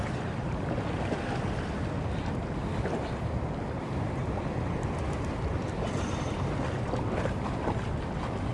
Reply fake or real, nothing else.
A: real